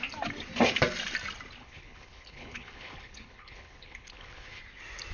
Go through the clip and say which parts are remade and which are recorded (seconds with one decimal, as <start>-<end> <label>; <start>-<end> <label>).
0.0-1.6 recorded; 1.6-4.6 remade; 4.6-5.1 recorded